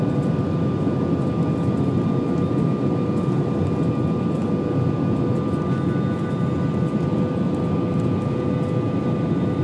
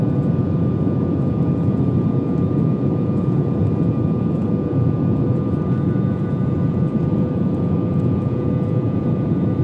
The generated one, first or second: second